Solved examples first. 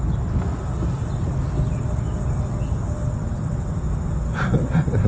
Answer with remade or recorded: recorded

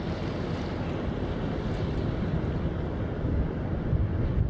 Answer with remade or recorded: recorded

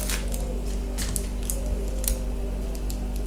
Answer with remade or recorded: recorded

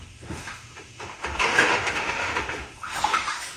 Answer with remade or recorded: remade